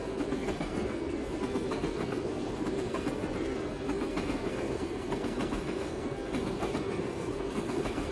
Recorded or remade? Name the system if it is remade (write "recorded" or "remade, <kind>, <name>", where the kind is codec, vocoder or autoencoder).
remade, codec, SNAC